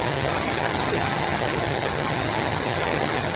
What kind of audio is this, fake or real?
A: fake